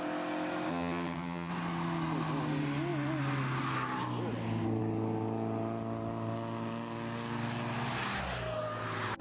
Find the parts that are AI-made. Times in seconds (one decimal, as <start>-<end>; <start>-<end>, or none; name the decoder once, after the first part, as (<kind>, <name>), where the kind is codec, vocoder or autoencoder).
0.7-1.5 (vocoder, HiFi-GAN)